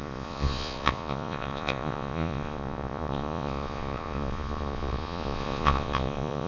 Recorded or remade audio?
remade